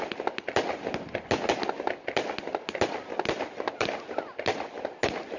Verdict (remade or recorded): recorded